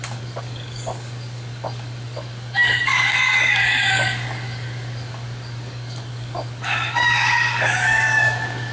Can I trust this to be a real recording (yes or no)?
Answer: no